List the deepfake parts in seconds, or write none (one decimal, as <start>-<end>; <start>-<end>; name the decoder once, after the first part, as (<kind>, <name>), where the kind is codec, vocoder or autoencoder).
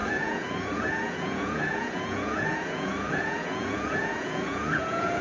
0.0-5.2 (vocoder, Vocos)